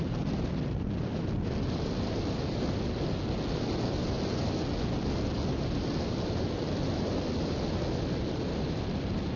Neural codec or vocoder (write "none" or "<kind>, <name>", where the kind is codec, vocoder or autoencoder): none